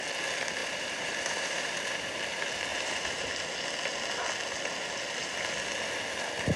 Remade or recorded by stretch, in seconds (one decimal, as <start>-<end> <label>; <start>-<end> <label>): 0.0-0.6 recorded; 0.6-2.1 remade; 2.1-2.7 recorded; 2.7-3.3 remade; 3.3-6.6 recorded

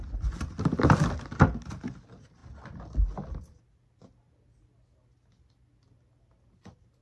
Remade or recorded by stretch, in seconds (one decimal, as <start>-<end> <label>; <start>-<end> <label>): 0.0-7.0 recorded

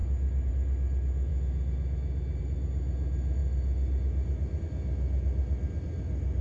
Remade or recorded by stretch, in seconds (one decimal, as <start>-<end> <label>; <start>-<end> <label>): 0.0-6.4 recorded

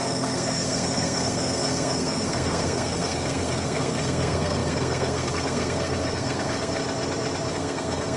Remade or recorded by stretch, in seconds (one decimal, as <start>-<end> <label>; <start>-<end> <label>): 0.0-6.8 remade; 6.8-7.5 recorded; 7.5-8.2 remade

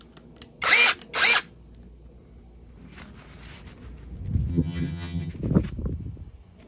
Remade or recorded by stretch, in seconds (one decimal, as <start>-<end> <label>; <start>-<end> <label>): 0.0-4.5 recorded; 4.5-5.3 remade; 5.3-6.7 recorded